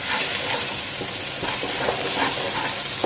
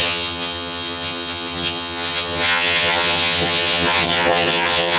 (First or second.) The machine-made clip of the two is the second